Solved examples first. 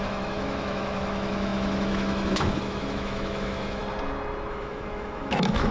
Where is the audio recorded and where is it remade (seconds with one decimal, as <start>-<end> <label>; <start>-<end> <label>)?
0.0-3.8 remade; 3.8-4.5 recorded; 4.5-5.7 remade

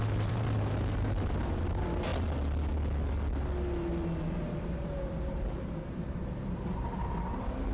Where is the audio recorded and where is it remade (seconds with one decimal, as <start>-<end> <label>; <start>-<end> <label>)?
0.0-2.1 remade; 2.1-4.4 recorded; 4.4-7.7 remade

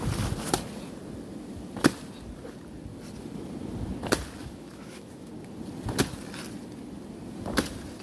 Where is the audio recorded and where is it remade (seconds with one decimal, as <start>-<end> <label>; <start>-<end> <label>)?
0.0-4.4 recorded; 4.4-5.3 remade; 5.3-8.0 recorded

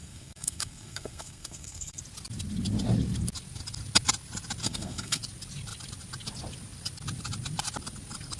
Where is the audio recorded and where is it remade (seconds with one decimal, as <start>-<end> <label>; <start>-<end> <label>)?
0.0-2.0 remade; 2.0-4.6 recorded; 4.6-5.2 remade; 5.2-8.4 recorded

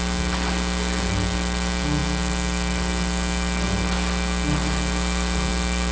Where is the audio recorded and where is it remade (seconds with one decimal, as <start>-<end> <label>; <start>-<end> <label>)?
0.0-5.9 recorded